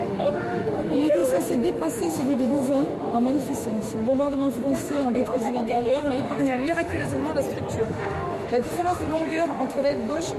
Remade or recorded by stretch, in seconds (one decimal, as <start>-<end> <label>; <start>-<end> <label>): 0.0-7.2 remade; 7.2-7.8 recorded; 7.8-10.4 remade